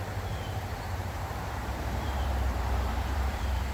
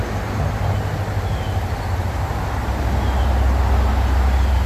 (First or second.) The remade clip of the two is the first